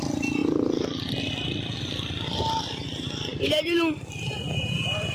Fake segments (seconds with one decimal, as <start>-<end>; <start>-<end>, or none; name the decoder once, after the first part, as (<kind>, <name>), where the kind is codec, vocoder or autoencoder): none